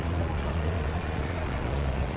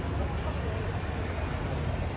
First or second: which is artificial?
first